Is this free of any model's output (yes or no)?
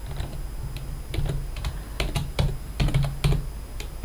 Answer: yes